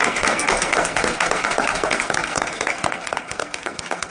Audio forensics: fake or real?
fake